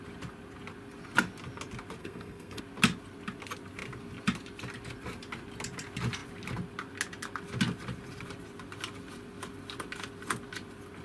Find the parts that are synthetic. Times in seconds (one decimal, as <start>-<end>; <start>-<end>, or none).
2.0-2.6